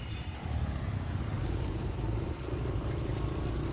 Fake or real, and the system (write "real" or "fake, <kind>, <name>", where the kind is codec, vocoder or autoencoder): fake, vocoder, BigVGAN v2